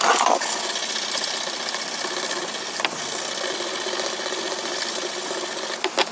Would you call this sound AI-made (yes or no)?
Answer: no